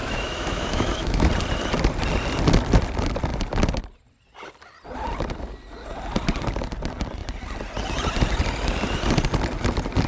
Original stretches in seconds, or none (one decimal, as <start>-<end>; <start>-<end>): 1.3-10.1